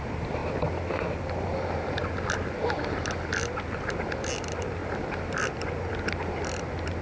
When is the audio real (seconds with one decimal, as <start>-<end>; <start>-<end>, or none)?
0.0-7.0